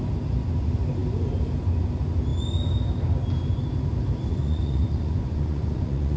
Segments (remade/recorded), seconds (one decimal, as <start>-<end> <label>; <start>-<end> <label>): 0.0-4.3 recorded; 4.3-6.2 remade